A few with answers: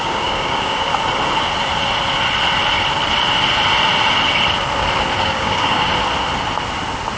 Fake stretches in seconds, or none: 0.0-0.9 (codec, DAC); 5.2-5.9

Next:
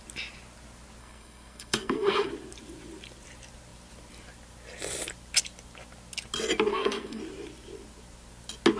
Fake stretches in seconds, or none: 1.0-2.3 (codec, SNAC); 6.7-7.2

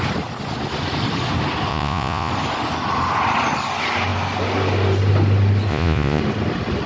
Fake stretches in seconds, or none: 1.7-2.3 (vocoder, Vocos); 5.7-6.2

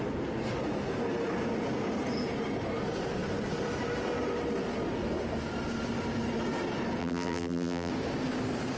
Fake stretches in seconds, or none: 7.0-7.9 (vocoder, BigVGAN v2)

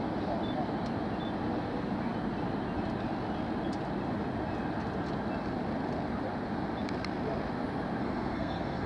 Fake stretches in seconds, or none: 8.0-8.9 (codec, SNAC)